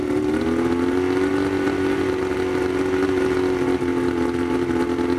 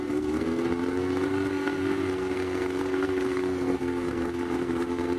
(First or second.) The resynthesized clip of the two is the second